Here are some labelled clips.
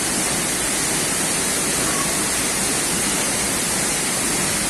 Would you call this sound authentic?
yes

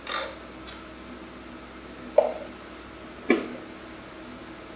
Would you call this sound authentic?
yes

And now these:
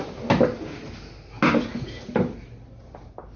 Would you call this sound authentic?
yes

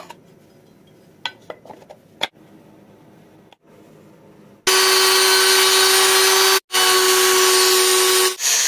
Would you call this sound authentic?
yes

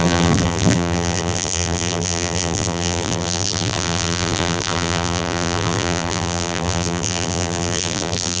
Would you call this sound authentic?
no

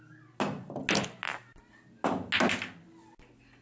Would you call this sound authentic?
yes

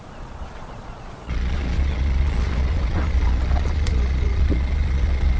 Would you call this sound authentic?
no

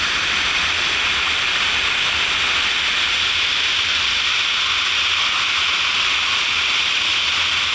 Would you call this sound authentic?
yes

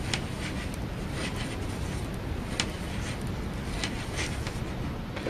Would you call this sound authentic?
yes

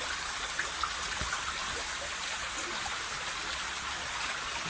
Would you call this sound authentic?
yes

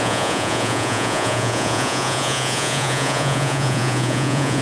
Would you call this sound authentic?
no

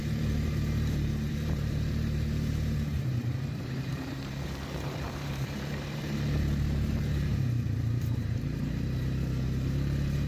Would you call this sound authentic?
no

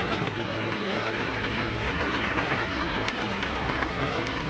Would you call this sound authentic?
no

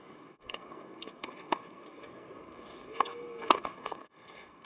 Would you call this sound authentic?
no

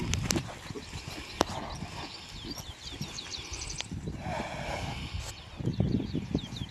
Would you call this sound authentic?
yes